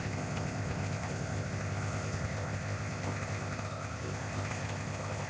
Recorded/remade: remade